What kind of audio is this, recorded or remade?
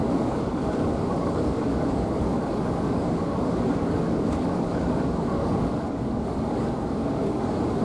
remade